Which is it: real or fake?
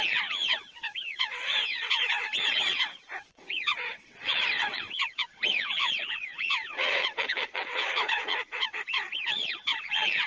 fake